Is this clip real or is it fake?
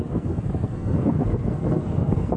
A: fake